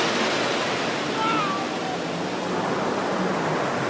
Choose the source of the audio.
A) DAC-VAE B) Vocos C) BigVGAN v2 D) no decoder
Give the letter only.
D